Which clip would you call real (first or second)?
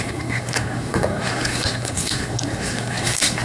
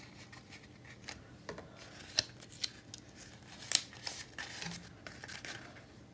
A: second